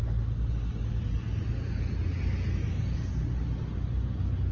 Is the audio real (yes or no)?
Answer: yes